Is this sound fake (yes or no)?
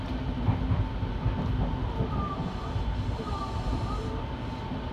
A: no